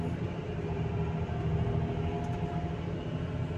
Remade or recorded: recorded